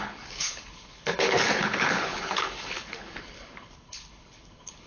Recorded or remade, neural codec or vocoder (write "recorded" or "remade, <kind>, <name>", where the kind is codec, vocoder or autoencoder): remade, codec, HILCodec